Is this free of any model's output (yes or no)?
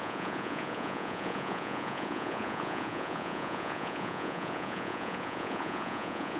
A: no